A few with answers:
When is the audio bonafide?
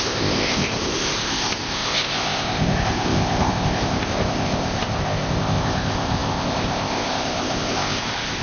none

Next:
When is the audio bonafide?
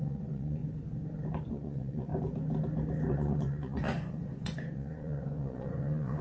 0.6-1.5; 2.1-3.1